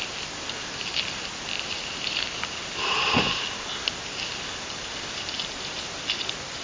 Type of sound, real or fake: real